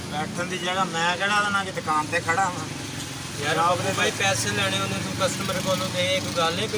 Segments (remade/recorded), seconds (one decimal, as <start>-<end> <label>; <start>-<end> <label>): 0.0-6.8 recorded